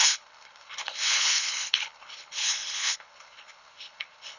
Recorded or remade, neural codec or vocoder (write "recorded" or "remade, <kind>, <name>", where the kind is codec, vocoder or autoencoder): remade, codec, HILCodec